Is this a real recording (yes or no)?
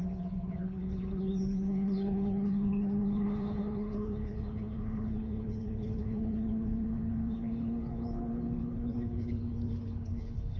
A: no